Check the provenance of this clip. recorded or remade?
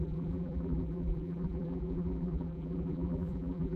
remade